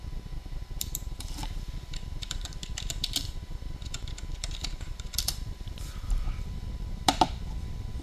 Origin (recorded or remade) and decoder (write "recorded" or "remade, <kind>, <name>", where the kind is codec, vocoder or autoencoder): remade, vocoder, BigVGAN v2